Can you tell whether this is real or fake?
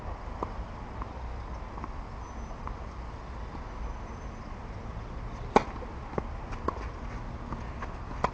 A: real